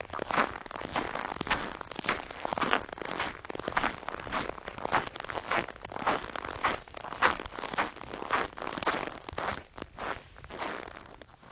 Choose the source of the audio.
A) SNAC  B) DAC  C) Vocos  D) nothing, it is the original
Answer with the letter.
D